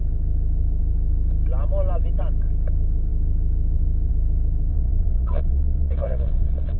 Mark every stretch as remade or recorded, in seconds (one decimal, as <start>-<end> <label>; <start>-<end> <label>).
0.0-4.7 recorded; 4.7-6.8 remade